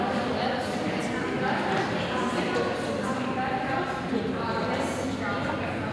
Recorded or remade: recorded